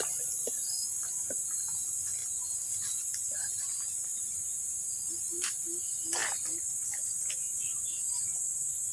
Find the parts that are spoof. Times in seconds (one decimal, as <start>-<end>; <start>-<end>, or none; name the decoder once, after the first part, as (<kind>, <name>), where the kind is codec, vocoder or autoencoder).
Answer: 2.2-3.0 (vocoder, BigVGAN v2); 6.2-7.3